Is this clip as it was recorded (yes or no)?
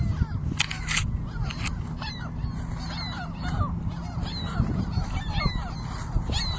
yes